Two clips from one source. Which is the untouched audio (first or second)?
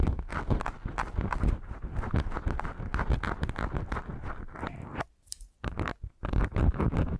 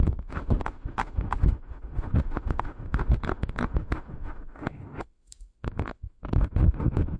first